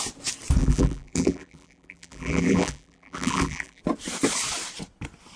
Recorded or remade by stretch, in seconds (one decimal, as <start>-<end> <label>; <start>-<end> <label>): 0.0-0.6 recorded; 0.6-3.8 remade; 3.8-5.4 recorded